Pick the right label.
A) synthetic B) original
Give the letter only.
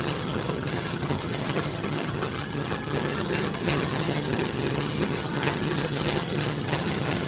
A